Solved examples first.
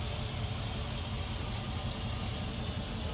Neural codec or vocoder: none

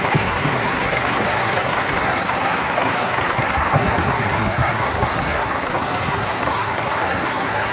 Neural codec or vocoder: codec, SNAC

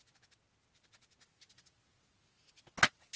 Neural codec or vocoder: none